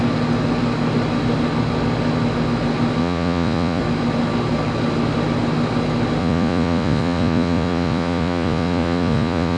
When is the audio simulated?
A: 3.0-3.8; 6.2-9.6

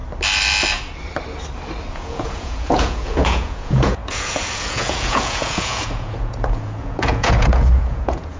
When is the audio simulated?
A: 1.9-8.4

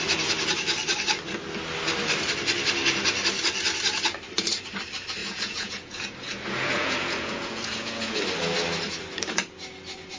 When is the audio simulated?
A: 5.2-8.2

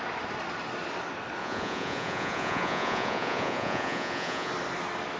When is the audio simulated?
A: 1.4-4.5

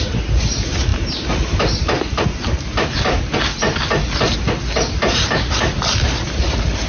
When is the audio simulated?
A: none

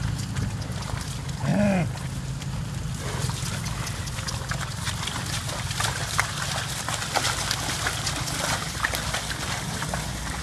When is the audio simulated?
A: none

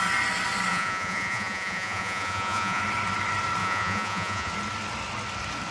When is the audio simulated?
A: 0.7-2.8; 3.6-4.5

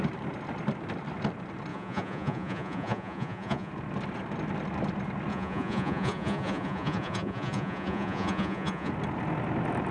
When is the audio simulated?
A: 1.7-3.7; 5.3-8.9